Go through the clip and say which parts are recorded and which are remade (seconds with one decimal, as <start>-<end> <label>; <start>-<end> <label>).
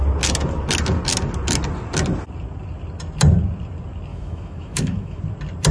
0.0-4.1 recorded; 4.1-5.2 remade; 5.2-5.7 recorded